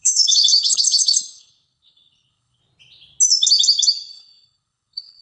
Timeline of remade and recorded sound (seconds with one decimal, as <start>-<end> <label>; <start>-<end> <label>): 0.0-2.6 remade; 2.6-4.1 recorded; 4.1-5.2 remade